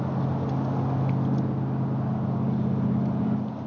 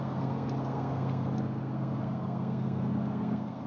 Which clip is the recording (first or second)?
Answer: first